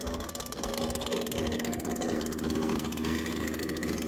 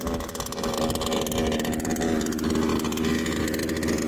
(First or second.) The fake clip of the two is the first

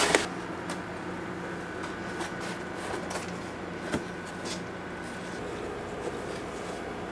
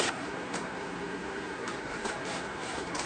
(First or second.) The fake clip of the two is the second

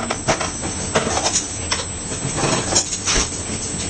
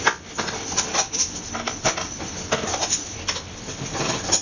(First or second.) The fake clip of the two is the second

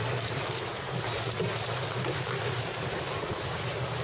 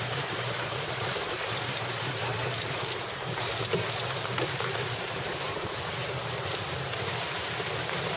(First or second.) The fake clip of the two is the second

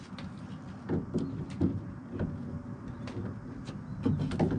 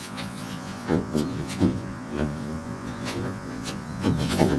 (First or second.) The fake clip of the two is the second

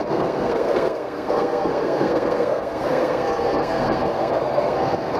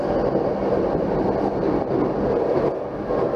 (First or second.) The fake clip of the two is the first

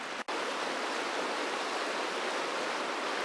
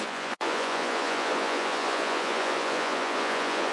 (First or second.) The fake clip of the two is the second